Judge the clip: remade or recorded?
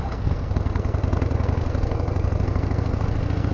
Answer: remade